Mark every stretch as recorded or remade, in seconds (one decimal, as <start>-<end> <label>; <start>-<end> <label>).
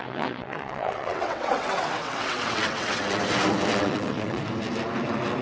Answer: 0.0-3.2 remade; 3.2-3.7 recorded; 3.7-4.4 remade; 4.4-5.4 recorded